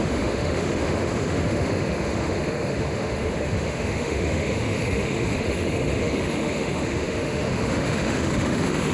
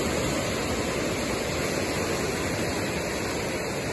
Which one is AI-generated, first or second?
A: first